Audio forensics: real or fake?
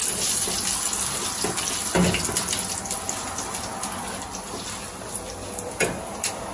real